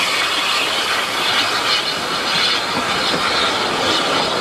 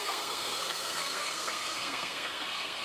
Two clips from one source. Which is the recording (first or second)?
first